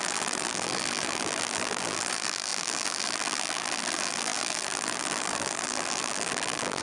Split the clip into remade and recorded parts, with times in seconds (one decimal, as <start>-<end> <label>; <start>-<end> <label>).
0.0-6.8 remade